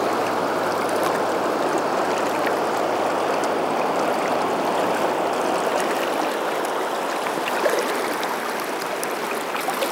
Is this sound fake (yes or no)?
no